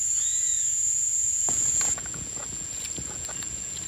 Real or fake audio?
fake